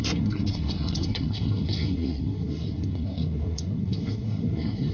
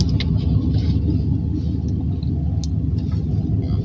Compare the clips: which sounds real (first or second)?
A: second